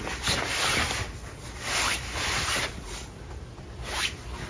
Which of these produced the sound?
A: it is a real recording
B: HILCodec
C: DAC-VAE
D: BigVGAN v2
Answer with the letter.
A